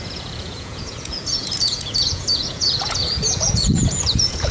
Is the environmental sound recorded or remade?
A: remade